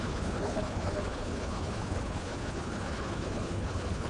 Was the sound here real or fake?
fake